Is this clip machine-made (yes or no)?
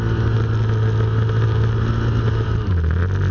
no